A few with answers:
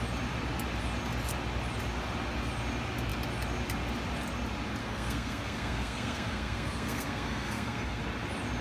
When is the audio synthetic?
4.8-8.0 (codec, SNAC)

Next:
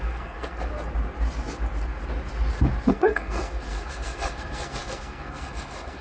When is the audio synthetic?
0.0-0.7 (codec, SNAC); 2.9-6.0

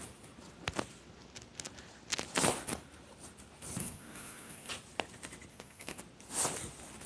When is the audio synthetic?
3.8-4.7 (codec, SNAC); 5.5-6.0